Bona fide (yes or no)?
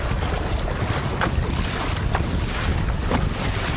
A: yes